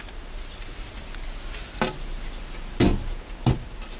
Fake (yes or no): no